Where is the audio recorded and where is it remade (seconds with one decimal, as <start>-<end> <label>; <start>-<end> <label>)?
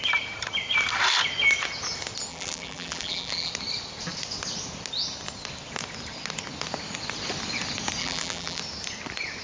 0.0-2.3 recorded; 2.3-3.5 remade; 3.5-8.0 recorded; 8.0-8.6 remade; 8.6-9.4 recorded